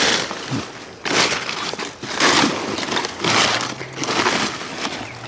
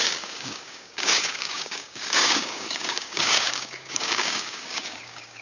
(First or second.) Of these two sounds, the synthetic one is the second